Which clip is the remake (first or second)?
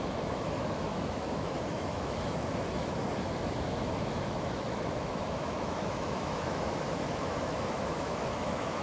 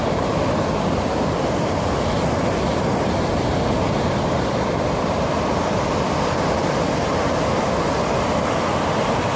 first